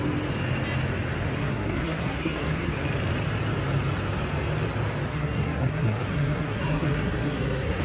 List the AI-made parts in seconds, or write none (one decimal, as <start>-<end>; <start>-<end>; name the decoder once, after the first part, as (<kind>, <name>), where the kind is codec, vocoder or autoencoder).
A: 1.4-2.7 (codec, SNAC); 5.1-7.8

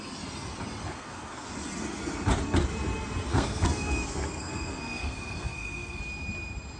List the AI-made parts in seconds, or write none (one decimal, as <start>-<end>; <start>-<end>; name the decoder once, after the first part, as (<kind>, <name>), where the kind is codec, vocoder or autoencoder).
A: 0.9-1.5 (codec, SNAC); 3.3-6.0